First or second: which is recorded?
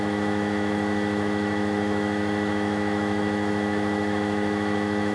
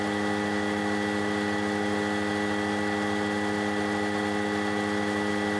second